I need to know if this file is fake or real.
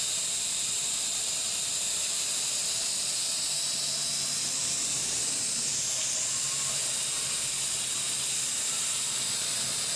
real